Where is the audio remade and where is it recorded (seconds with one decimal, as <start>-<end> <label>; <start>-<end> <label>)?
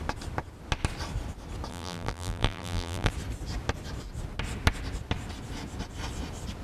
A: 0.0-1.7 recorded; 1.7-3.1 remade; 3.1-6.6 recorded